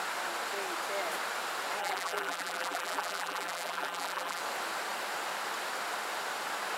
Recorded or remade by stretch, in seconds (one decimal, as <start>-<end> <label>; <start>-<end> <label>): 0.0-1.8 recorded; 1.8-4.4 remade; 4.4-6.8 recorded